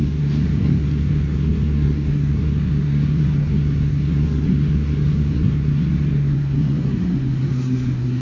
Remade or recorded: remade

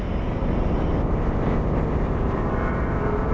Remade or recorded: recorded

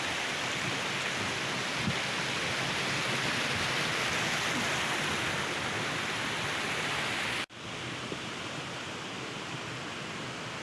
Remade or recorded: recorded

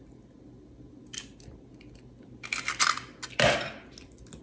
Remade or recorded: recorded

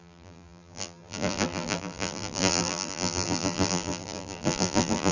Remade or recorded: remade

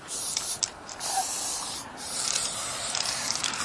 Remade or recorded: remade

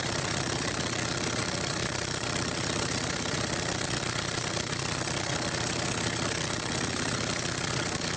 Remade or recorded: remade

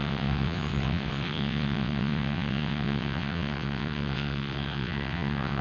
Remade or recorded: remade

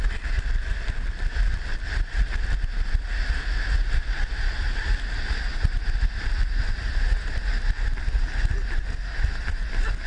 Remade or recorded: recorded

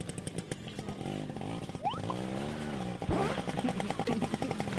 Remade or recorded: recorded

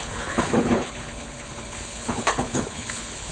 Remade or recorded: remade